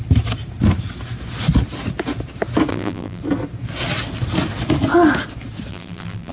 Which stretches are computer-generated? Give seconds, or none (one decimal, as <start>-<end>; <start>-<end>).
2.7-3.2; 5.7-6.3